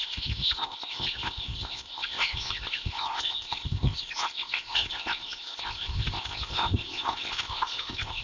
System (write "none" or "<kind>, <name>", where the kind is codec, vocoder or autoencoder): codec, ZipCodec